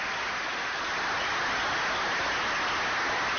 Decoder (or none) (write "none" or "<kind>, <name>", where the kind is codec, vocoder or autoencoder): none